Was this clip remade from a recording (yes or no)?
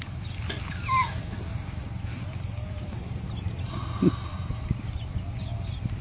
no